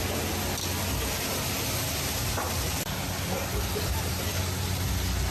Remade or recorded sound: recorded